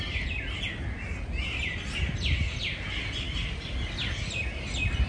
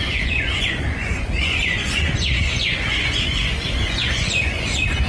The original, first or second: first